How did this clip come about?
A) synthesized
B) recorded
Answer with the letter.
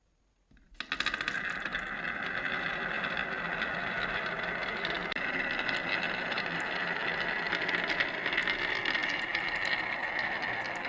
B